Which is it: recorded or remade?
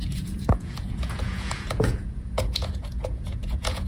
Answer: remade